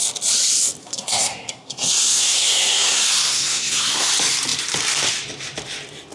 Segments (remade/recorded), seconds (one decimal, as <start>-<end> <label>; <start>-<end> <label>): 0.0-0.8 recorded; 0.8-4.1 remade; 4.1-6.1 recorded